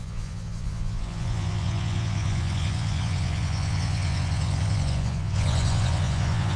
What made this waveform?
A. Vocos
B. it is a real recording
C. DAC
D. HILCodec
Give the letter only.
A